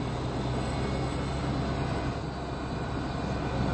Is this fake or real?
real